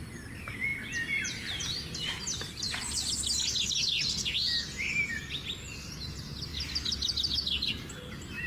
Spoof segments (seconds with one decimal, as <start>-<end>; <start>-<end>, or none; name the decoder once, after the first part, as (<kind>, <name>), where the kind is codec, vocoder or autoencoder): none